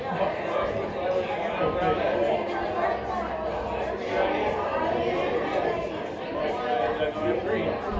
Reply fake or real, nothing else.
real